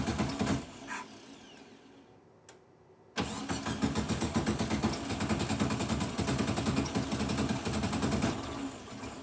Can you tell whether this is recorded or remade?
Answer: recorded